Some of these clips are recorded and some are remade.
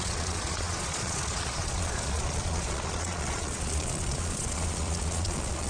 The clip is remade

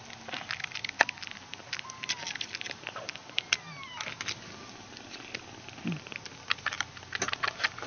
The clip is recorded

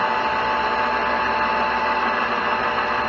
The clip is recorded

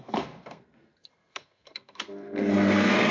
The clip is remade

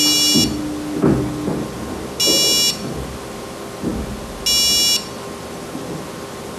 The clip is recorded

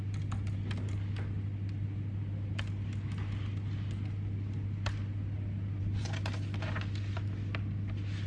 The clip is recorded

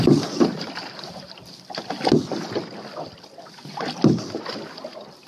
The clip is recorded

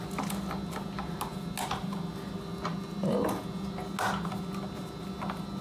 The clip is recorded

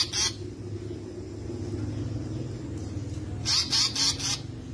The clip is recorded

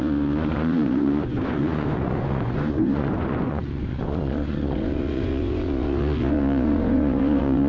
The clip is remade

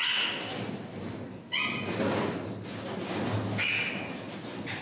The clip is recorded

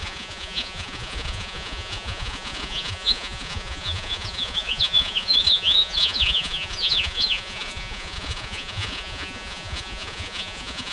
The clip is remade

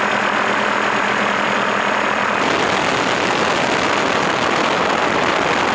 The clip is recorded